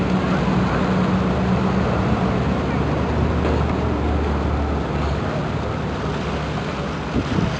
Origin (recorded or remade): recorded